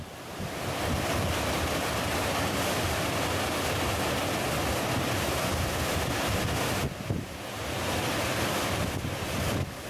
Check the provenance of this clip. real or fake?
real